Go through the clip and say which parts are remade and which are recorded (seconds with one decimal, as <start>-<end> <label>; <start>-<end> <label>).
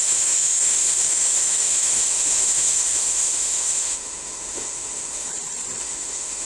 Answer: 0.0-5.3 remade; 5.3-5.8 recorded; 5.8-6.4 remade